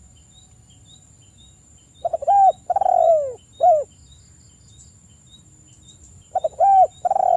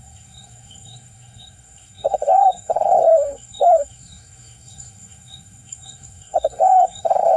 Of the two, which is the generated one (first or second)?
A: second